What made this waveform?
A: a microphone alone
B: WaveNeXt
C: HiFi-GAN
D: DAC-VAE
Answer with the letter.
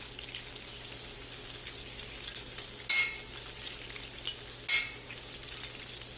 A